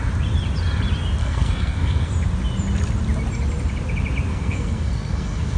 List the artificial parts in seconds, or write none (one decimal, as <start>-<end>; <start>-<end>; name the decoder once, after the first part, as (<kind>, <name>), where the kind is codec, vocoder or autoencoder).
1.2-2.1 (codec, SNAC); 4.3-5.6